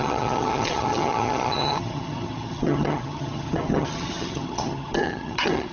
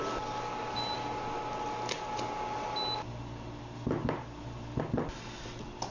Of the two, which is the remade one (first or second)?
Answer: first